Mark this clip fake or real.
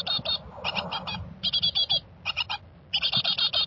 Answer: real